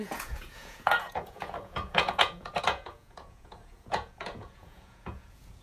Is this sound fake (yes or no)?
yes